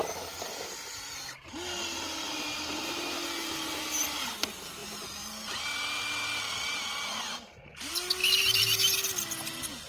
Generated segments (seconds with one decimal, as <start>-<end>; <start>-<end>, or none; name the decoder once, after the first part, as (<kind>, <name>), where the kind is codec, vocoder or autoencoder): 8.2-9.0 (vocoder, BigVGAN v2)